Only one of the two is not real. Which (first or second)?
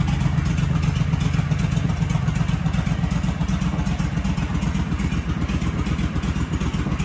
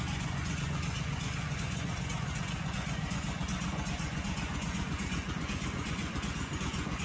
second